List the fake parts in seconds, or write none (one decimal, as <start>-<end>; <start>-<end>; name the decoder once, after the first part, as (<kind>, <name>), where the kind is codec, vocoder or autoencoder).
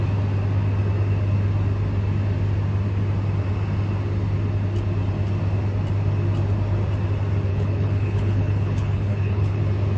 7.5-9.6 (codec, HILCodec)